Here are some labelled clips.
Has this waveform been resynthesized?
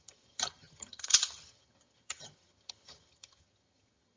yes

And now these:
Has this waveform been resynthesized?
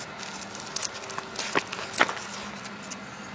no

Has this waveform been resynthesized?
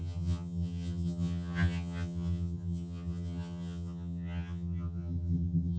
yes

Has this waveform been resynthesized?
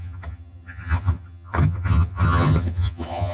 yes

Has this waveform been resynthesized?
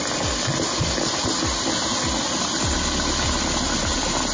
no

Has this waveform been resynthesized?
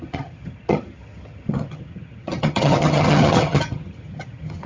yes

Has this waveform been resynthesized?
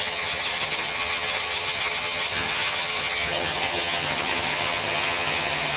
yes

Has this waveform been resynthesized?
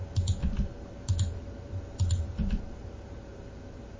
no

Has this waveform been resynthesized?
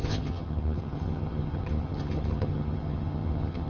yes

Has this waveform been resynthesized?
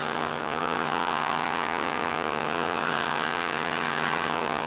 yes